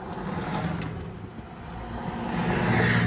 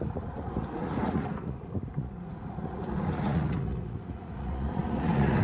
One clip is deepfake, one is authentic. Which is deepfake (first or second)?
second